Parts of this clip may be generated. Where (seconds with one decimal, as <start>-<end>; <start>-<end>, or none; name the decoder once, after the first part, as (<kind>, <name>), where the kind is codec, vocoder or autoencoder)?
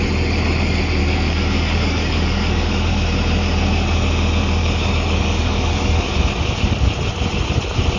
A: 1.0-2.9 (codec, DAC); 4.6-6.2